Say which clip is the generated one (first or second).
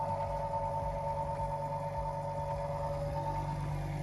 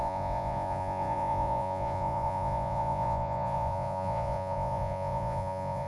second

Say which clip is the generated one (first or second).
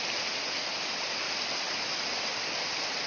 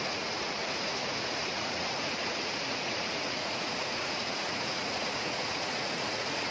second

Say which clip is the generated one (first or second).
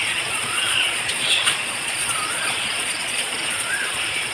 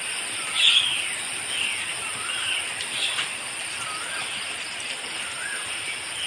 first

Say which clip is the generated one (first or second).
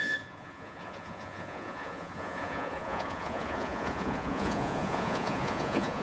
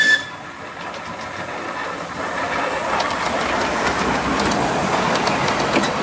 first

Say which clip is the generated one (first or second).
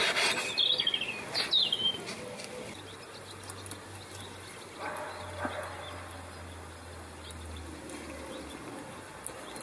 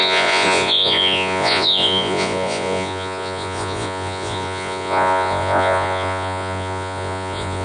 second